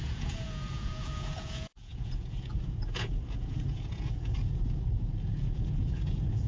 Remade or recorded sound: remade